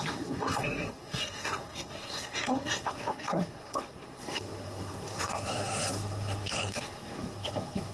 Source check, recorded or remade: remade